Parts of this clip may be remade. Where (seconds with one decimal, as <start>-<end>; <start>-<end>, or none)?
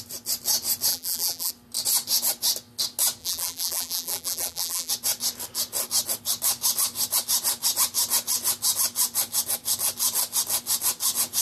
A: 0.9-1.5; 3.2-4.9